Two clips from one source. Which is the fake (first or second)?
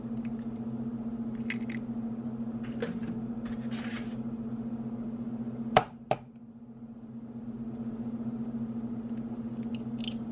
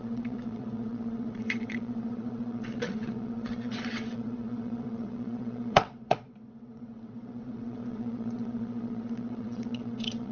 second